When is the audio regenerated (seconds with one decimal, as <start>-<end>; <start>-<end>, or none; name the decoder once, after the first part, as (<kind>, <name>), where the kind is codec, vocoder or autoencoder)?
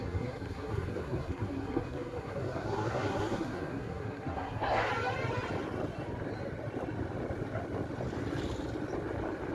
0.0-4.9 (codec, SNAC)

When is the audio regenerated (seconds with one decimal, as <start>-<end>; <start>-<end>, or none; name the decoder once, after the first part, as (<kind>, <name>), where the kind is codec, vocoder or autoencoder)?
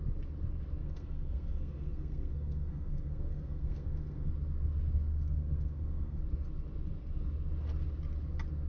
0.8-4.3 (codec, SNAC); 5.1-6.2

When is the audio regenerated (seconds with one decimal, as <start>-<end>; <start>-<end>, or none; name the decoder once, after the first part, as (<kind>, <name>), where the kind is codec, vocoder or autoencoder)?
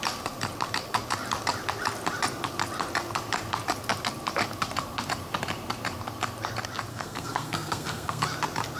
6.9-8.2 (codec, SNAC)